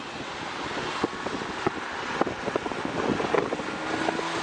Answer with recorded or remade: recorded